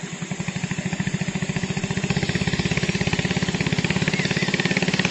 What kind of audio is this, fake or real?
real